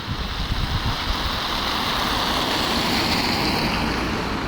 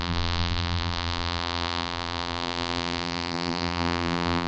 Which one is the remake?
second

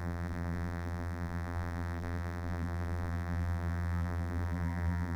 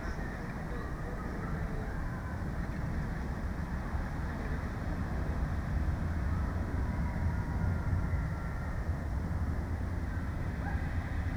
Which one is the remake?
first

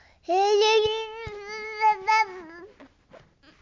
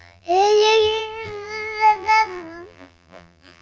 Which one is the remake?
second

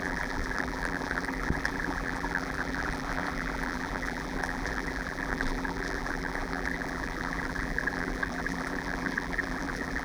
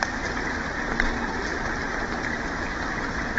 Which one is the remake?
first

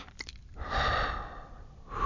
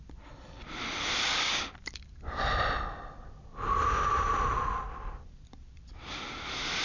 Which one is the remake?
first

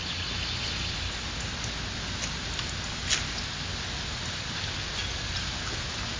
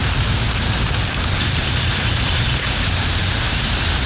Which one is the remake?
second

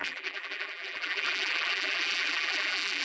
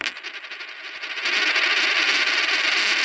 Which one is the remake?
first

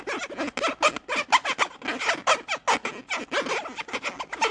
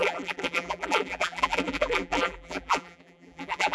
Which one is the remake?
second